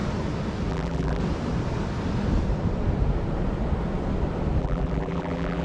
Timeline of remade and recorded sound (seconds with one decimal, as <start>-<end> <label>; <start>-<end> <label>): 0.0-0.7 recorded; 0.7-1.2 remade; 1.2-4.6 recorded; 4.6-5.6 remade